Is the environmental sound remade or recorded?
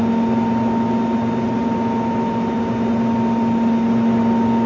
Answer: recorded